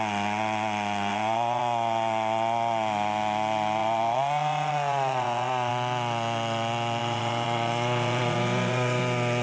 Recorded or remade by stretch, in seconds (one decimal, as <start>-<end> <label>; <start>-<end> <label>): 0.0-1.1 recorded; 1.1-1.6 remade; 1.6-3.8 recorded; 3.8-5.7 remade; 5.7-7.0 recorded; 7.0-9.0 remade; 9.0-9.4 recorded